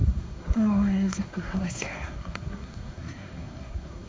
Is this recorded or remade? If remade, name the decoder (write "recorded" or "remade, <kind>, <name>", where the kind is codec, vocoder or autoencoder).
remade, codec, SNAC